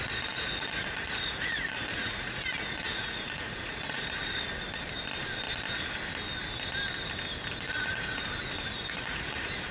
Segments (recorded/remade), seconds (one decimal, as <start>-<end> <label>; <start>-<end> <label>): 0.0-4.0 remade; 4.0-7.6 recorded; 7.6-8.2 remade; 8.2-8.9 recorded; 8.9-9.7 remade